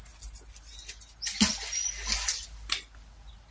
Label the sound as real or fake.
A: real